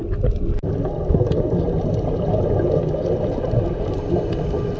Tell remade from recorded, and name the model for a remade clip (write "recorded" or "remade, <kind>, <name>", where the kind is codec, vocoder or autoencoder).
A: recorded